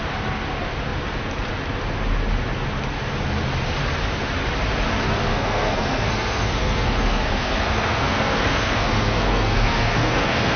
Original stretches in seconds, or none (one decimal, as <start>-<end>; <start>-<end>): 0.0-5.3